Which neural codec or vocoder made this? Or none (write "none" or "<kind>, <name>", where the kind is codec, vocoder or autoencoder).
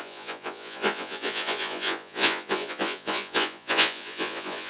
vocoder, Vocos